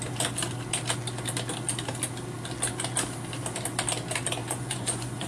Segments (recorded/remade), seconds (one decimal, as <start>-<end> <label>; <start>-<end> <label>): 0.0-4.4 recorded; 4.4-5.3 remade